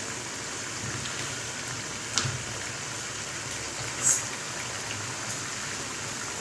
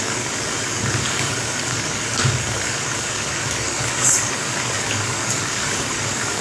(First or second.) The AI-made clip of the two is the second